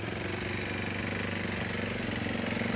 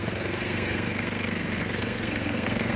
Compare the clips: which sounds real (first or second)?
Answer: first